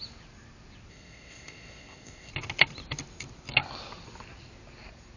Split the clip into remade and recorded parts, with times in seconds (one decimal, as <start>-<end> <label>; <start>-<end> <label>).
0.0-0.9 recorded; 0.9-2.3 remade; 2.3-5.2 recorded